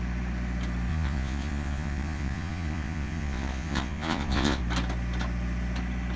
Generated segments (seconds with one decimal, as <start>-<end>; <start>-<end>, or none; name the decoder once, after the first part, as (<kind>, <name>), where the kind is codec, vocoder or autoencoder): 0.9-4.6 (vocoder, Vocos)